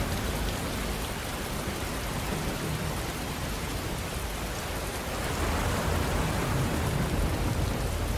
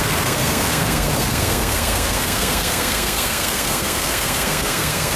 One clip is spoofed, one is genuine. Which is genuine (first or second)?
first